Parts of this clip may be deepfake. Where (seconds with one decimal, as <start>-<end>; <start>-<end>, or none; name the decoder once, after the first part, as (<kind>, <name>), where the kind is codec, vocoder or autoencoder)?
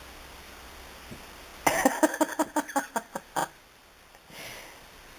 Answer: none